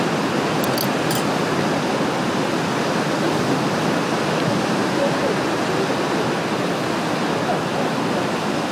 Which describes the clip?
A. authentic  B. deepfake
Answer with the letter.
A